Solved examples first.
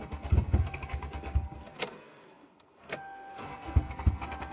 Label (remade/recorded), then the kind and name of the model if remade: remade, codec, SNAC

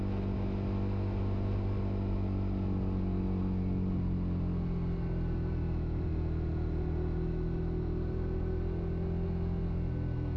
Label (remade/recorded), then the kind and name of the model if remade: recorded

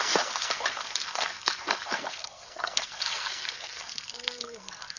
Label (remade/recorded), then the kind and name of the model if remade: remade, codec, SNAC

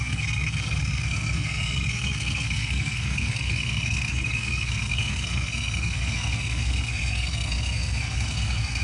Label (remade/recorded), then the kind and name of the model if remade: remade, codec, SNAC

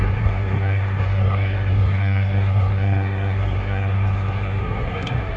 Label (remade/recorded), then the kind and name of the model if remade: remade, codec, SNAC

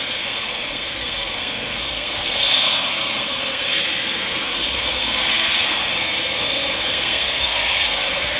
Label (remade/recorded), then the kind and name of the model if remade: remade, codec, SNAC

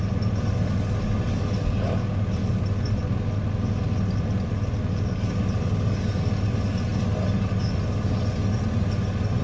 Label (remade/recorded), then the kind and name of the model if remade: recorded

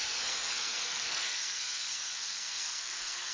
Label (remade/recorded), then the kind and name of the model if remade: remade, codec, SNAC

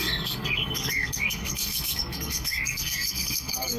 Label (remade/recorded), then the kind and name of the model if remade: remade, codec, SNAC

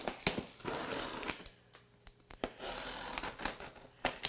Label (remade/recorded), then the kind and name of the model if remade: recorded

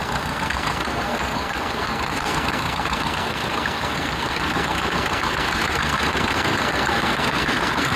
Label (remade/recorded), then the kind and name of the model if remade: remade, codec, SNAC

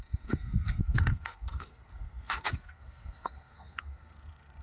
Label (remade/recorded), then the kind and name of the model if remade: remade, codec, SNAC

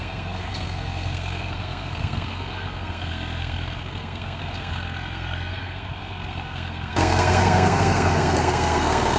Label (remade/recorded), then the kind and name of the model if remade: remade, codec, SNAC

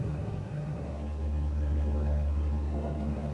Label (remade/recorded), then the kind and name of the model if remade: remade, codec, SNAC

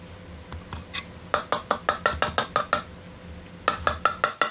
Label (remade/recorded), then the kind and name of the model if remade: recorded